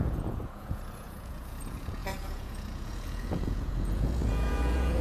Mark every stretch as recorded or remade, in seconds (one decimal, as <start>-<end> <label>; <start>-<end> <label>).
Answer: 0.0-5.0 remade